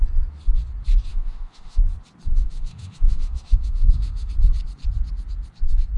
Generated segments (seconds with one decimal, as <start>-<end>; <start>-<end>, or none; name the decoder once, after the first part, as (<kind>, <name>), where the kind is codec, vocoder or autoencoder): 1.1-1.8 (autoencoder, DAC-VAE); 2.3-4.3